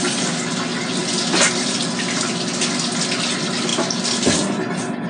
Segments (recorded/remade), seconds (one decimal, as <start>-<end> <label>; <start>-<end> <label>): 0.0-5.1 recorded